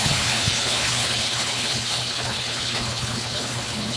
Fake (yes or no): yes